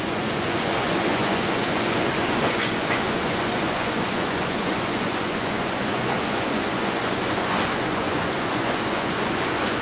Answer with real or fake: fake